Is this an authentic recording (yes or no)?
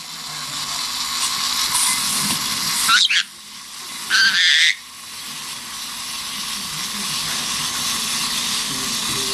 yes